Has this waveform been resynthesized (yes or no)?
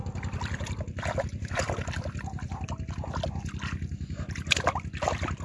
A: no